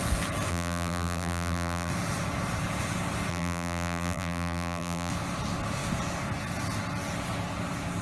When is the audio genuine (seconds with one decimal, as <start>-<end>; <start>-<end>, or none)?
0.0-0.5; 1.9-3.3; 5.1-8.0